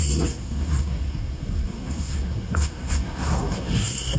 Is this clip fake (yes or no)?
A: yes